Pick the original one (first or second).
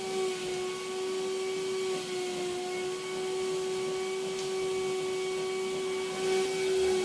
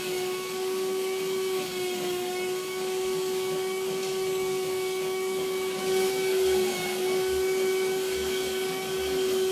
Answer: first